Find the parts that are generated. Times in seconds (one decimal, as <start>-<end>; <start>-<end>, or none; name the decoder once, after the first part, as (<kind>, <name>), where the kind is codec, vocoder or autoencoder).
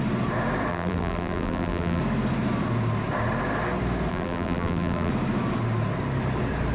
0.7-2.0 (vocoder, BigVGAN v2); 4.1-5.1